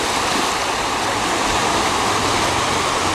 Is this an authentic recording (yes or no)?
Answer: yes